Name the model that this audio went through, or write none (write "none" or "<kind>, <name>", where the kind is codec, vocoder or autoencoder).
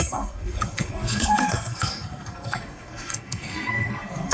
codec, SNAC